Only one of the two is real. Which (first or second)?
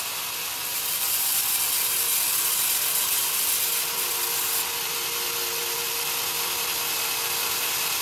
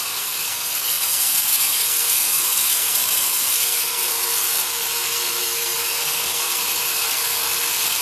first